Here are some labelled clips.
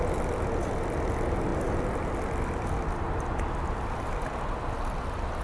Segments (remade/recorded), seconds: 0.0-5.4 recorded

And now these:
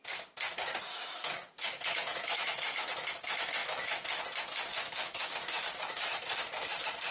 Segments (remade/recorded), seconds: 0.0-0.9 recorded; 0.9-3.1 remade; 3.1-3.6 recorded; 3.6-4.2 remade; 4.2-4.7 recorded; 4.7-6.3 remade; 6.3-7.1 recorded

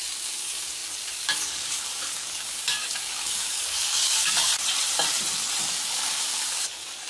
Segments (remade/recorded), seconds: 0.0-4.5 remade; 4.5-5.6 recorded; 5.6-7.1 remade

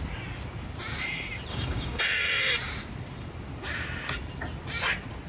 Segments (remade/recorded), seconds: 0.0-1.5 recorded; 1.5-2.0 remade; 2.0-5.3 recorded

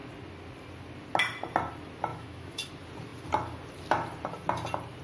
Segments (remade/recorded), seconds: 0.0-2.1 recorded; 2.1-2.7 remade; 2.7-5.0 recorded

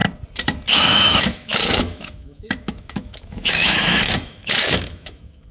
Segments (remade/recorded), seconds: 0.0-0.7 recorded; 0.7-5.5 remade

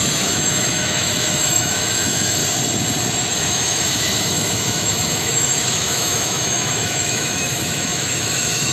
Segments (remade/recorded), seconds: 0.0-2.4 remade; 2.4-3.2 recorded; 3.2-8.7 remade